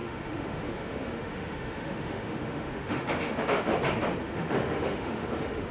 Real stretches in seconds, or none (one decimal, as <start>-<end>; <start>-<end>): 3.7-4.2